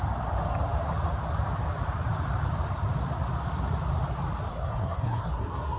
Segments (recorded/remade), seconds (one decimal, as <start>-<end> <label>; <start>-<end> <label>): 0.0-4.5 recorded; 4.5-5.8 remade